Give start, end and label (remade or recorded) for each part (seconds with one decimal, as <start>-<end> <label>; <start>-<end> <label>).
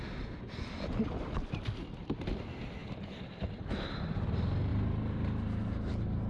0.0-4.7 recorded; 4.7-6.3 remade